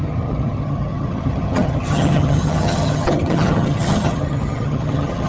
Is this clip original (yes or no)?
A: no